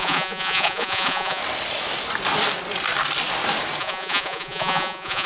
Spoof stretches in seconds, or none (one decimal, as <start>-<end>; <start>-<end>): 0.0-1.4; 3.8-5.3